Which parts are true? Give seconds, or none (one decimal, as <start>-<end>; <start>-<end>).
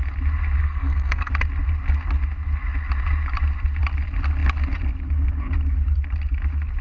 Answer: 0.0-0.6; 1.3-6.8